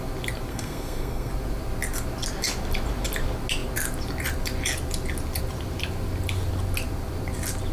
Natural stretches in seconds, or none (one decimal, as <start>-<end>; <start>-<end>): 0.0-0.5; 1.3-7.7